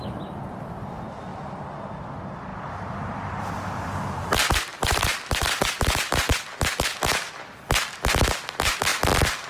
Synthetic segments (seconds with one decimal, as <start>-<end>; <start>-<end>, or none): 2.5-7.3